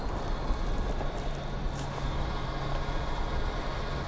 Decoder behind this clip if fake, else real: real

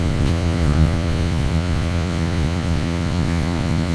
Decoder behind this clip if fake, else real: fake, vocoder, Vocos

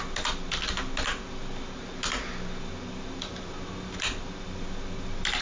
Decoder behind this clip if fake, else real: real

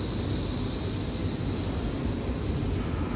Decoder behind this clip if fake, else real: real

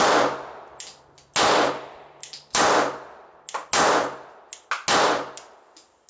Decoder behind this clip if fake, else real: real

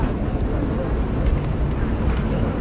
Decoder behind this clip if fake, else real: real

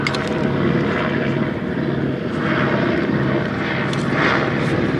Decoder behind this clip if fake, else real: real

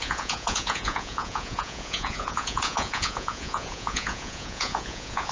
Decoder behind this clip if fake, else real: fake, vocoder, Vocos